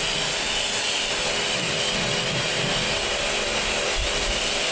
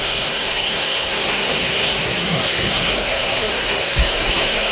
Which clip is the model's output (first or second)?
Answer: second